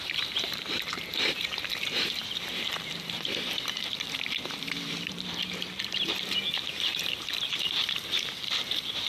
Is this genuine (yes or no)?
no